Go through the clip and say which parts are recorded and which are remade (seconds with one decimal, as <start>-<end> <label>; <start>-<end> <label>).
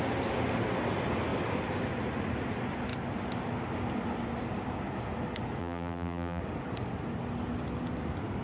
0.0-5.6 recorded; 5.6-6.4 remade; 6.4-8.4 recorded